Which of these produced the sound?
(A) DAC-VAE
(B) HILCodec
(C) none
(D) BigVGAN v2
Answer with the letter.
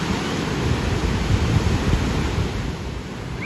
C